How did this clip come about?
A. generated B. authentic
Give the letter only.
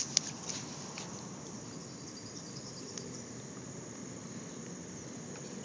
B